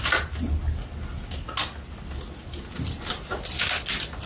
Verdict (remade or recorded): recorded